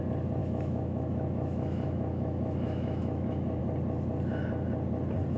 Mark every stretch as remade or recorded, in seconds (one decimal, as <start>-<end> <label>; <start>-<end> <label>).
0.0-0.4 recorded; 0.4-3.6 remade; 3.6-5.4 recorded